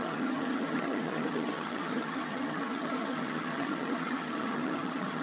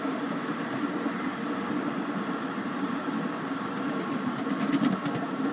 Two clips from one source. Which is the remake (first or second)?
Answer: first